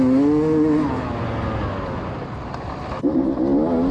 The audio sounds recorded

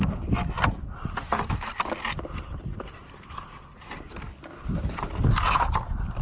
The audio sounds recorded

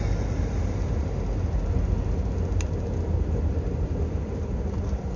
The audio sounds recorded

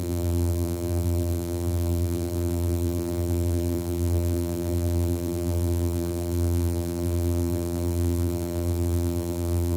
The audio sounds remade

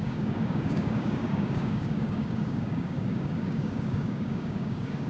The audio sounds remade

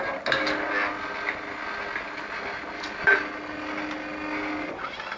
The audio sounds recorded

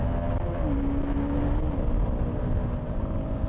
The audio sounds recorded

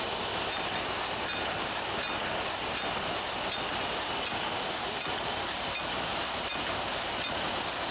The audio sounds recorded